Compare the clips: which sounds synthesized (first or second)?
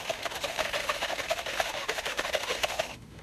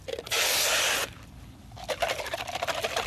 first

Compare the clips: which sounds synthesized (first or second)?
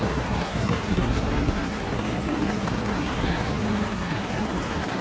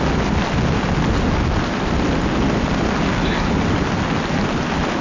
first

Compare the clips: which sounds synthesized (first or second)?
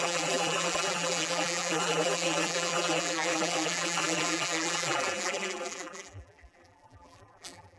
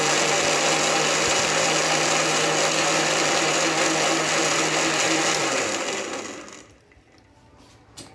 first